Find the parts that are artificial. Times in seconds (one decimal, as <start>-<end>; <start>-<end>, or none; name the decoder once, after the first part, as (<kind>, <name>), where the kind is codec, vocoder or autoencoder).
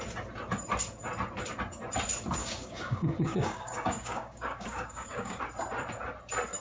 2.4-5.4 (codec, DAC)